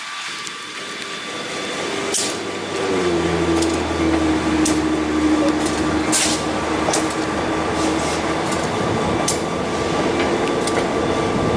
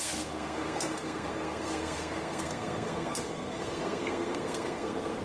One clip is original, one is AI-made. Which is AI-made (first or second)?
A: second